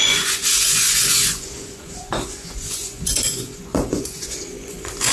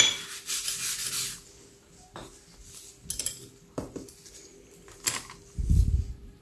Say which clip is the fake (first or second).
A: first